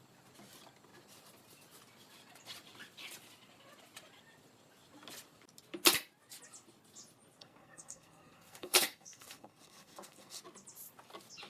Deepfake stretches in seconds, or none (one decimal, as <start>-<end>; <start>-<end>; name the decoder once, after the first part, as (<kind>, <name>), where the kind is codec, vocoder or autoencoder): 7.4-10.4 (codec, SNAC)

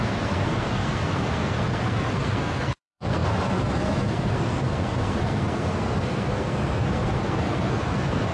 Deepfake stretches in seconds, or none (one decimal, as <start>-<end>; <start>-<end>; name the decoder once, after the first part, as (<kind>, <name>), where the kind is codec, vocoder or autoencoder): 0.0-8.3 (codec, SNAC)

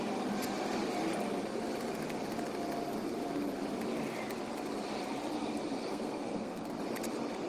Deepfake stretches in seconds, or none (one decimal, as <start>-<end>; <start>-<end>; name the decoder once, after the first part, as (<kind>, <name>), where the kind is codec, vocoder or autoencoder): 5.9-6.7 (codec, SNAC)